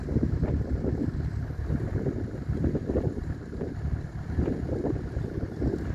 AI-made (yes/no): yes